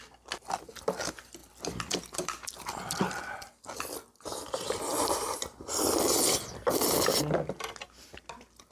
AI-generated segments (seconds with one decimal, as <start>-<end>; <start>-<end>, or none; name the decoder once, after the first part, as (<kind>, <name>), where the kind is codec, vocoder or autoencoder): 1.4-3.1 (vocoder, BigVGAN v2)